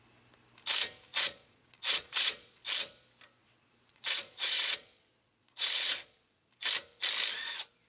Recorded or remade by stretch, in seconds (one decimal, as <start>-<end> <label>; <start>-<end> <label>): 0.0-1.1 recorded; 1.1-2.6 remade; 2.6-3.4 recorded; 3.4-6.5 remade; 6.5-7.9 recorded

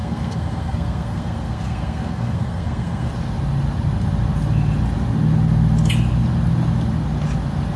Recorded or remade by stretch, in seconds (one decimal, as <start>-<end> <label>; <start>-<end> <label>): 0.0-3.1 remade; 3.1-7.8 recorded